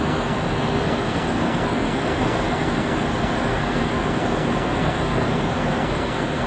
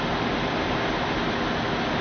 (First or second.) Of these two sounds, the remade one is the first